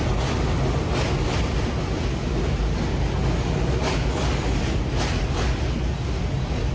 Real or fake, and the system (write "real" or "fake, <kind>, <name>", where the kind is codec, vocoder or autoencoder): real